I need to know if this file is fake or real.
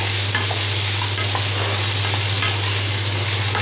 real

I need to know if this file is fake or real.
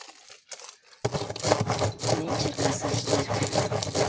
real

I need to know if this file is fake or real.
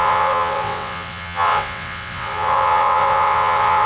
fake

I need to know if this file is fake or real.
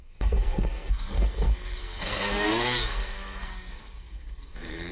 fake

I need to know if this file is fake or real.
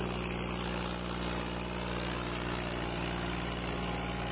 real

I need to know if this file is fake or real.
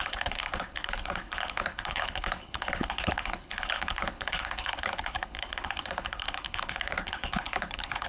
fake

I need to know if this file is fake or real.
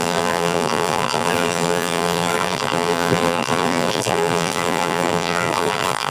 fake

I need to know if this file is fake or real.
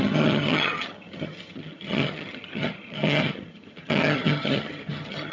fake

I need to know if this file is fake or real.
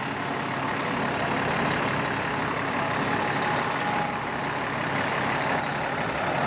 real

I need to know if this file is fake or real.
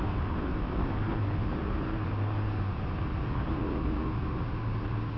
real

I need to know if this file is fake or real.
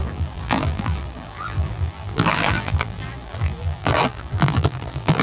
fake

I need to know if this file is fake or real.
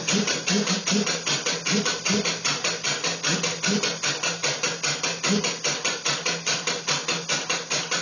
real